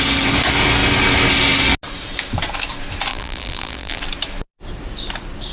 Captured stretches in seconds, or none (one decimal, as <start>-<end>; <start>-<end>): 0.0-3.1; 4.0-5.5